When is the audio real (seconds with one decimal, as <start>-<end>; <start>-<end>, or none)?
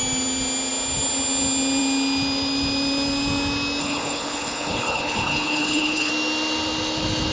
0.0-3.8; 6.1-7.3